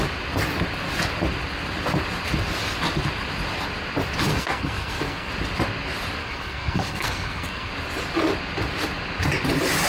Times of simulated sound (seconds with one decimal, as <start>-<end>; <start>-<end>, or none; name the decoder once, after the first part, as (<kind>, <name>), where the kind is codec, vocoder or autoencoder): 4.3-5.3 (codec, SNAC); 6.2-7.7